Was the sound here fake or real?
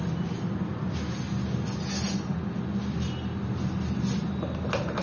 real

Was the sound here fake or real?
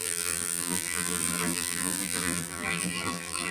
fake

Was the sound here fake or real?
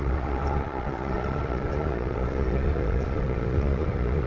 fake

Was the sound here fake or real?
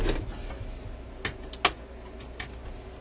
real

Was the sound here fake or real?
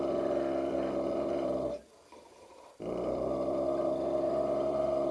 fake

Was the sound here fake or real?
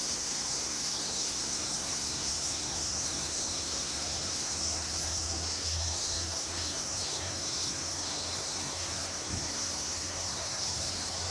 fake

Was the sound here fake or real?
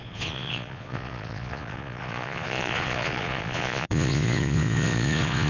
fake